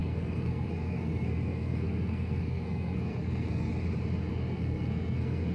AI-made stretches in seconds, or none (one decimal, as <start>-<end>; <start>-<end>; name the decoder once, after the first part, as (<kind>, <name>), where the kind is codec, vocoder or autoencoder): 0.0-3.7 (codec, SNAC); 4.3-5.5